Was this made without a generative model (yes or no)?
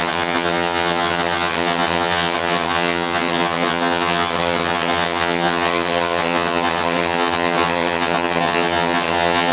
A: no